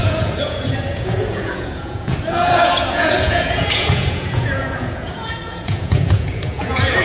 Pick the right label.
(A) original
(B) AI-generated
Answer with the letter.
B